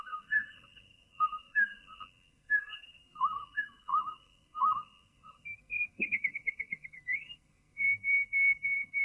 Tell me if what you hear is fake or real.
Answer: fake